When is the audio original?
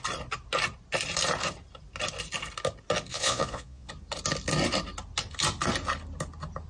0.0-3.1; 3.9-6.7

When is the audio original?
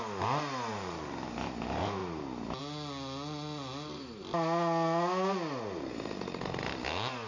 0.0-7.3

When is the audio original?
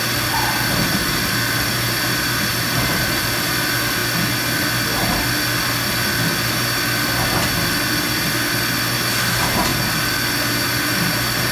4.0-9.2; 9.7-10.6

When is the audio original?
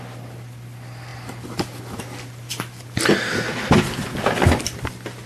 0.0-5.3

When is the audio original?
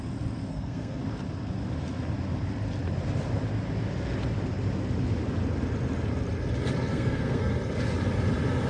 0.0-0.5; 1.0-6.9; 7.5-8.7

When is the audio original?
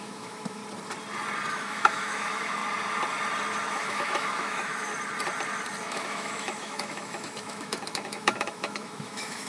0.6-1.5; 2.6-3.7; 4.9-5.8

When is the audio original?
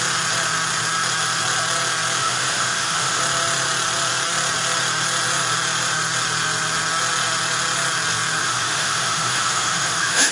0.0-2.2; 3.2-8.4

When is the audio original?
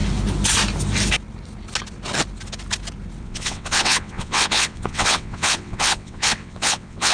0.0-3.2